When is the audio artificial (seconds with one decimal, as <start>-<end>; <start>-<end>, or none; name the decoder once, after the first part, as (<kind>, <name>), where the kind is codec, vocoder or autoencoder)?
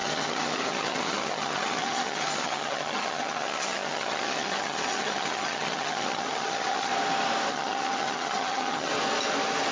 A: 0.0-6.9 (vocoder, HiFi-GAN); 7.5-8.9